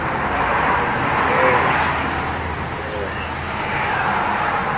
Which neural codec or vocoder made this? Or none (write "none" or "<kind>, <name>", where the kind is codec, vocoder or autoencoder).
none